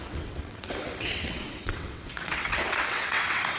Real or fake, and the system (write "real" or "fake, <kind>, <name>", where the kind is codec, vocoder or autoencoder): fake, vocoder, WaveNeXt